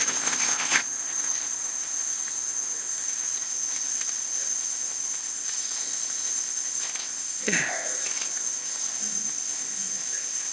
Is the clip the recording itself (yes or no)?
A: no